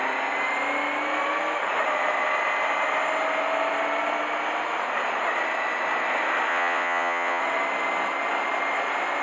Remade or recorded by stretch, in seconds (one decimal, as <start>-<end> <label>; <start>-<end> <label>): 0.0-6.5 recorded; 6.5-7.4 remade; 7.4-9.2 recorded